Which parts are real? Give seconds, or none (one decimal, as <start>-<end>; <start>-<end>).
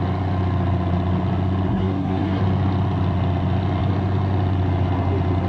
0.0-1.7; 2.4-5.5